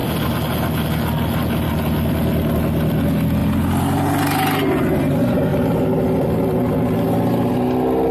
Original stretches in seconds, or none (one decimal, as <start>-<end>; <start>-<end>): 0.0-8.1